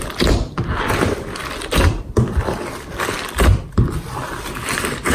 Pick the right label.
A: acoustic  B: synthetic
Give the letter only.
B